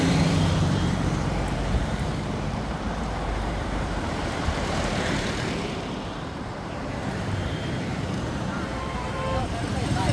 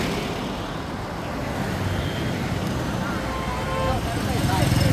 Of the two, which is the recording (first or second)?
second